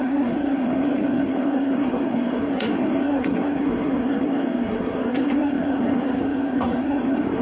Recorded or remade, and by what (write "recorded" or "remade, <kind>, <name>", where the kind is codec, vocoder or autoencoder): remade, codec, SNAC